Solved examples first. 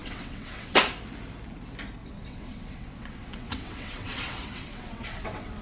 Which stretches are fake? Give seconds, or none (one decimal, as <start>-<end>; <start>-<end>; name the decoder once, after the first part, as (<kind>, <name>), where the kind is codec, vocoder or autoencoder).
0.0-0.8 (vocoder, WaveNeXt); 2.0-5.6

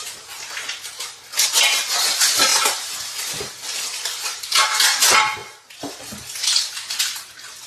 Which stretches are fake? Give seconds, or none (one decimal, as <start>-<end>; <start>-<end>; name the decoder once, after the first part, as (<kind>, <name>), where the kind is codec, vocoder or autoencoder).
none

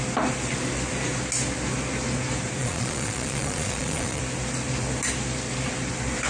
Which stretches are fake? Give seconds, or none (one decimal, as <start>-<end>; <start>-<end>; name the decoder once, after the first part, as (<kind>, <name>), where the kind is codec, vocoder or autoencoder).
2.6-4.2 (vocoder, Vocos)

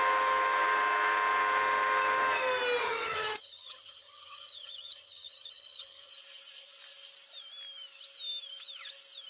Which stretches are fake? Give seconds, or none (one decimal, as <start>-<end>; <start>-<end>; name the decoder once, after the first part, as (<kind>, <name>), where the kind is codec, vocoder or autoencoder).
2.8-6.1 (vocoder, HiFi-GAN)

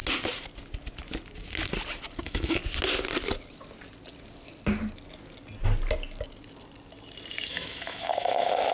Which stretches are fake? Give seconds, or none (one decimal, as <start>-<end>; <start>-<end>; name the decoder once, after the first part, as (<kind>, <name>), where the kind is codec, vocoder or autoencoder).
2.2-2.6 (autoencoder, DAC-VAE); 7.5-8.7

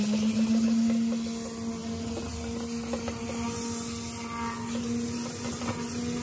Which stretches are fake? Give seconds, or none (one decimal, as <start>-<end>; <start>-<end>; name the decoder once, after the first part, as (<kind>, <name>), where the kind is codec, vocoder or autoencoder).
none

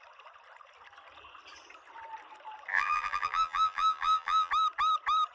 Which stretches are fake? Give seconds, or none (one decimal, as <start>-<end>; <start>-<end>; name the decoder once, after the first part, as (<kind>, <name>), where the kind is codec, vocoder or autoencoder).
2.7-4.5 (vocoder, BigVGAN v2)